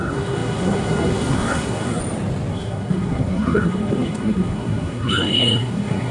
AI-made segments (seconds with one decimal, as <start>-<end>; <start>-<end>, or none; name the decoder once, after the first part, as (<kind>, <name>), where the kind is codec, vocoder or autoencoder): 0.0-2.0 (codec, SNAC); 2.5-6.1